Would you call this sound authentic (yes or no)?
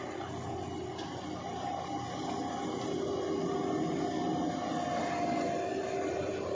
yes